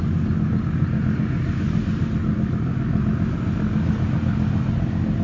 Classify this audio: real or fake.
real